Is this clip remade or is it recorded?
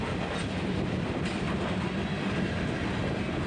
recorded